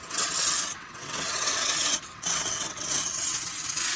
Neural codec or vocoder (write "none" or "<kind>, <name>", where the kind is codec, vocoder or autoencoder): vocoder, WaveNeXt